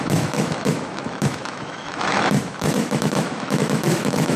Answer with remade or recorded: remade